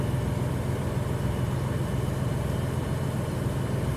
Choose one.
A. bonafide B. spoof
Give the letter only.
A